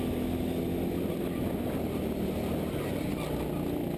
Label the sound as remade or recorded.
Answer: recorded